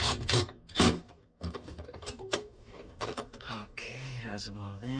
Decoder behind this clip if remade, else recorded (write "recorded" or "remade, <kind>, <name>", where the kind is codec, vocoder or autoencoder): remade, codec, DAC